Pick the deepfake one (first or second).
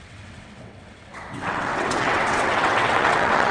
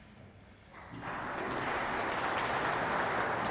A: first